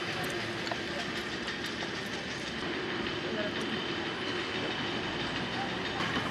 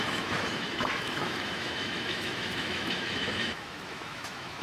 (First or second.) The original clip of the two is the first